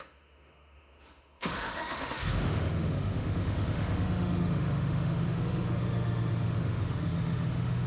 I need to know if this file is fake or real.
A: fake